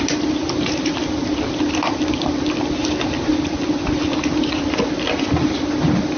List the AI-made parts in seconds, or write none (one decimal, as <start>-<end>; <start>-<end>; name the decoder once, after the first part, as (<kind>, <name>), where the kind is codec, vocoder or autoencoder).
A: 0.4-1.2 (vocoder, BigVGAN v2)